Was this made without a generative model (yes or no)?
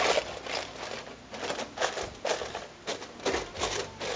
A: yes